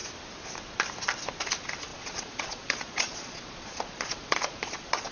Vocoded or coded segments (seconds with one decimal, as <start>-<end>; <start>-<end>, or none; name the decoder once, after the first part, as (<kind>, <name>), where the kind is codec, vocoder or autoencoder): 1.9-5.1 (vocoder, Vocos)